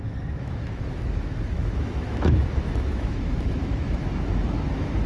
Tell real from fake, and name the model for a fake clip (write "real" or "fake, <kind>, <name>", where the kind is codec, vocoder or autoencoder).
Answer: fake, autoencoder, DAC-VAE